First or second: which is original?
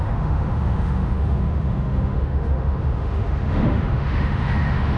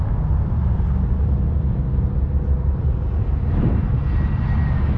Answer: second